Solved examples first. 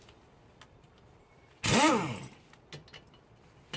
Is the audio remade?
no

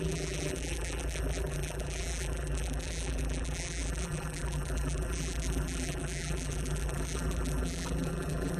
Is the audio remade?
yes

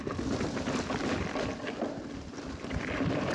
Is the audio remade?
yes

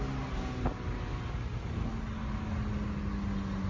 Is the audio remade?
no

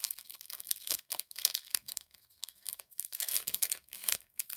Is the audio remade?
yes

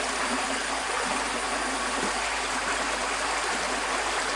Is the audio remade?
no